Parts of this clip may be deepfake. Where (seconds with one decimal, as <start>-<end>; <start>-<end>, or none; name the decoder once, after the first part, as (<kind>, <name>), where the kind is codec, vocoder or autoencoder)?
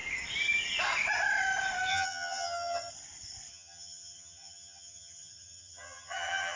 1.9-2.9 (vocoder, HiFi-GAN); 3.5-6.6